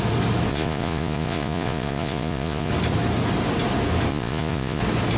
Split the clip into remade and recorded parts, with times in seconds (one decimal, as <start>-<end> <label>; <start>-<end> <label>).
0.0-0.5 recorded; 0.5-2.7 remade; 2.7-4.1 recorded; 4.1-4.8 remade; 4.8-5.2 recorded